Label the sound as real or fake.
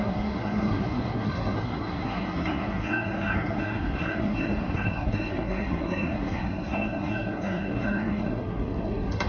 fake